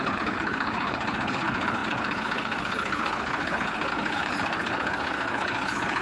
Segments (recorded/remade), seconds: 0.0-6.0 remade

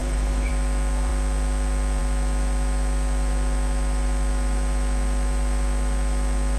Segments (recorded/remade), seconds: 0.0-0.5 remade; 0.5-6.6 recorded

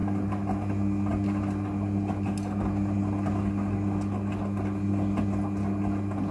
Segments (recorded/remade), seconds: 0.0-6.3 recorded

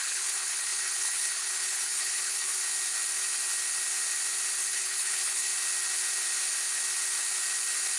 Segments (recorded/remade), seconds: 0.0-2.6 remade; 2.6-4.6 recorded; 4.6-5.5 remade; 5.5-8.0 recorded

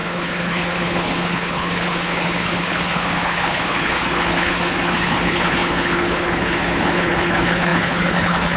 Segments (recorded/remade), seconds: 0.0-8.6 remade

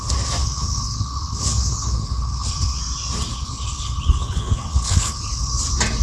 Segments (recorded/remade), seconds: 0.0-0.4 recorded; 0.4-2.8 remade; 2.8-3.3 recorded; 3.3-5.5 remade; 5.5-6.0 recorded